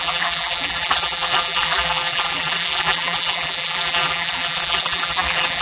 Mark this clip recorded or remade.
remade